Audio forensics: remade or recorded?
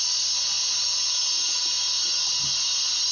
recorded